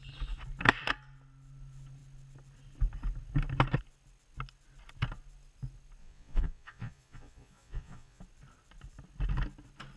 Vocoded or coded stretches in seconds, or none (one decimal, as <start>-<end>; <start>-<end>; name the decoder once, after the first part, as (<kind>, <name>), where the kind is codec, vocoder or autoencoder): 6.0-8.2 (vocoder, Vocos)